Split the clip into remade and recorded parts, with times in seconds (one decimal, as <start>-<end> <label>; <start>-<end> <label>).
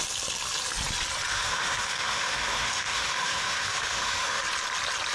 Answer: 0.0-1.3 recorded; 1.3-4.4 remade; 4.4-5.1 recorded